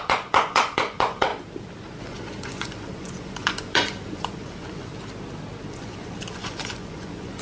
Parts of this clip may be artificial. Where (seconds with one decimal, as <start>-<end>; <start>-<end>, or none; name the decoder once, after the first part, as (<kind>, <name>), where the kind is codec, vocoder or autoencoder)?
0.0-1.3 (vocoder, Vocos); 2.0-4.9; 5.7-7.4